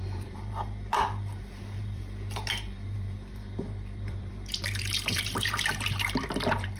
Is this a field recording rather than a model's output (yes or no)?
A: no